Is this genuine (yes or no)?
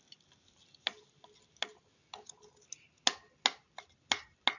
yes